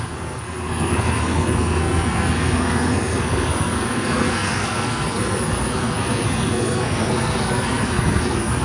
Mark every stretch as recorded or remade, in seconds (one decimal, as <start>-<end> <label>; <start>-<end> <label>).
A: 0.0-8.6 remade